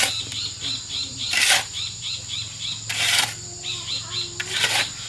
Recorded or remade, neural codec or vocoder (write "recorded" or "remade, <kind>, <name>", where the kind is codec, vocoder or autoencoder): recorded